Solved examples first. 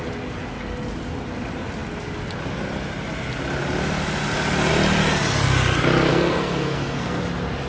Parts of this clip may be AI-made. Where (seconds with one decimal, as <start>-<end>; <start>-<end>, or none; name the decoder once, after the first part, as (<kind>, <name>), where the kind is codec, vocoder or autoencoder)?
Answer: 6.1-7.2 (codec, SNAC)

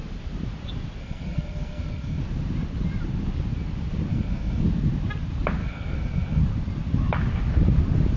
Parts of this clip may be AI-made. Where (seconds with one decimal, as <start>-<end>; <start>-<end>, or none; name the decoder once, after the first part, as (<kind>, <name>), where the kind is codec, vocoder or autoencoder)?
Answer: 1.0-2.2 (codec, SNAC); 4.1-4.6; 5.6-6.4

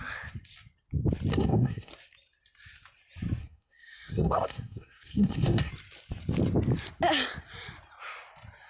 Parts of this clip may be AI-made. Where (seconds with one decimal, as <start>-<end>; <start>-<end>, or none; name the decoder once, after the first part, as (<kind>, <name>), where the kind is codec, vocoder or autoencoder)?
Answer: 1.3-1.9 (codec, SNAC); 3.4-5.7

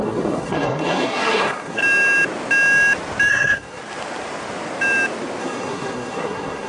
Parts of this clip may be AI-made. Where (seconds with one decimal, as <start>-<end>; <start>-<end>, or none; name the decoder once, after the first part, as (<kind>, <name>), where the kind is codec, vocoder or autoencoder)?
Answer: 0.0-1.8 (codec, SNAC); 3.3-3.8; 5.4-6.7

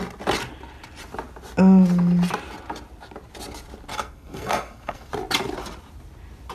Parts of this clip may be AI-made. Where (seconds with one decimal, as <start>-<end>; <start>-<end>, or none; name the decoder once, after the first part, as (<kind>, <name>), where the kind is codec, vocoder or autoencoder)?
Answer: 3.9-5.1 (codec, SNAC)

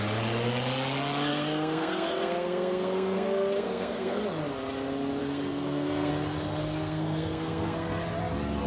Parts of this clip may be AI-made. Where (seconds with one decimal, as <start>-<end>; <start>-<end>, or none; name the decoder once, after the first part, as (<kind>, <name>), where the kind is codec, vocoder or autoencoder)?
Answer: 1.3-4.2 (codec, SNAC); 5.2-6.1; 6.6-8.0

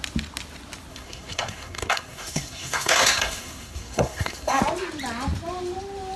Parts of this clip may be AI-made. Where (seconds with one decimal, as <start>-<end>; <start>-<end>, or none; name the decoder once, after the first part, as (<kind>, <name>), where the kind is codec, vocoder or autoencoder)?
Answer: 0.9-4.6 (codec, SNAC)

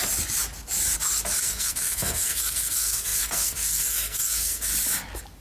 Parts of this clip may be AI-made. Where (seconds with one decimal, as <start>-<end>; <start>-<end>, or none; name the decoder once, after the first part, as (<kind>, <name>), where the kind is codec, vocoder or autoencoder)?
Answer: 1.4-4.7 (codec, SNAC)